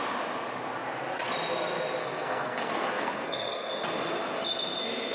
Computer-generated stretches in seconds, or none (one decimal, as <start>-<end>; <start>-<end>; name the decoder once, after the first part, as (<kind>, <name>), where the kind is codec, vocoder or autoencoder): 2.0-3.7 (codec, SNAC)